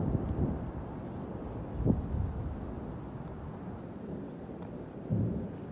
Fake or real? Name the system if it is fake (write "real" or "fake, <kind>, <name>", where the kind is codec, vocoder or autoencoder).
real